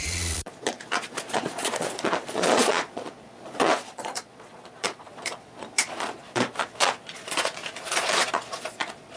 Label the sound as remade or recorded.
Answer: remade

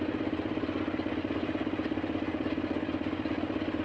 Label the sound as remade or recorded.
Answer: recorded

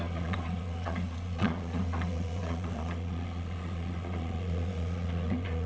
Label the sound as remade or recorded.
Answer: remade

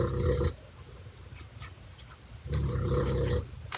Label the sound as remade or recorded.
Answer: recorded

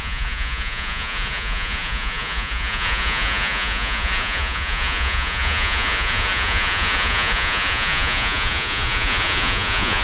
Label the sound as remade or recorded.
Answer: remade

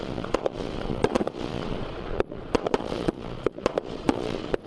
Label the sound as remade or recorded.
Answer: remade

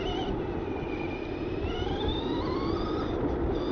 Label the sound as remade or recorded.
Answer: recorded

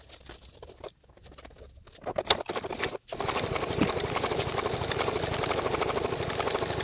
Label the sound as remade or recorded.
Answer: recorded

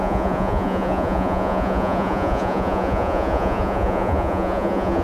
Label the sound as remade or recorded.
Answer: remade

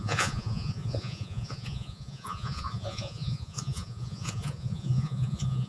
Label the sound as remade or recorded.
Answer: remade